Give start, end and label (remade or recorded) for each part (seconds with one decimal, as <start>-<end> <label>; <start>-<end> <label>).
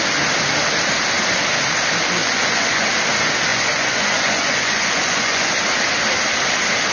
0.0-2.2 recorded; 2.2-2.9 remade; 2.9-3.5 recorded; 3.5-5.5 remade; 5.5-6.9 recorded